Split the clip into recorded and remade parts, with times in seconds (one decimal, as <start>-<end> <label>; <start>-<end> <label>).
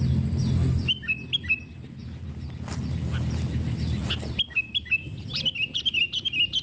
0.0-6.6 recorded